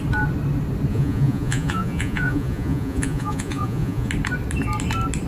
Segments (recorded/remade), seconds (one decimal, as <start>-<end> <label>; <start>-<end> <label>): 0.0-0.9 recorded; 0.9-4.1 remade; 4.1-5.3 recorded